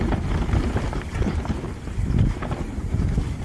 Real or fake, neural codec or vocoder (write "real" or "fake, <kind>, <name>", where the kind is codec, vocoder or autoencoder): real